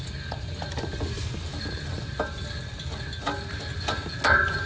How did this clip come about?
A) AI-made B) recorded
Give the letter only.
B